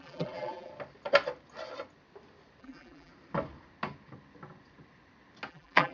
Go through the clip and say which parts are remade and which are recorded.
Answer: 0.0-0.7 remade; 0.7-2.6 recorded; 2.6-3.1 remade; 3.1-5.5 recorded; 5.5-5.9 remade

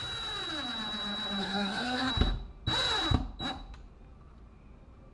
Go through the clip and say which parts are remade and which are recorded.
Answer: 0.0-1.4 recorded; 1.4-2.1 remade; 2.1-5.1 recorded

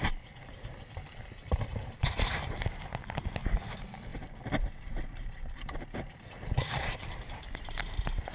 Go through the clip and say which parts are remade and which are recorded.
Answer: 0.0-8.3 remade